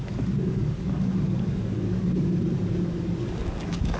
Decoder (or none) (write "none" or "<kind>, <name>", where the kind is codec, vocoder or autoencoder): codec, DAC